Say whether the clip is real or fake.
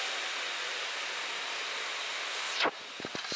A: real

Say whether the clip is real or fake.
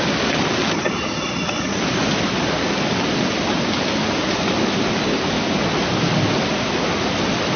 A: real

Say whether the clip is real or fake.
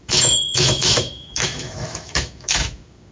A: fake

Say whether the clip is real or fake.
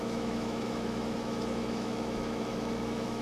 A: fake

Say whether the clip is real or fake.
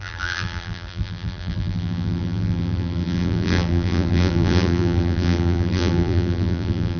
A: fake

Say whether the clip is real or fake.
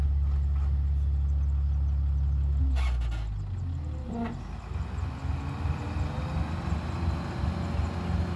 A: real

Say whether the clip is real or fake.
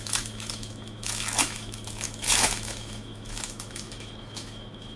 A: fake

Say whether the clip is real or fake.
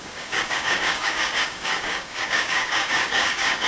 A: fake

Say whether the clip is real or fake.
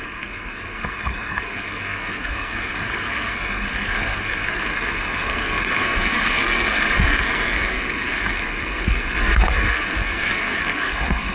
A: fake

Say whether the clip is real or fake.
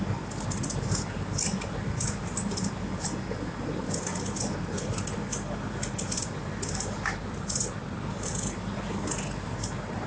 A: real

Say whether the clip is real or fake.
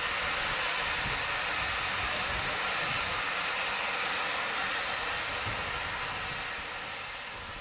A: real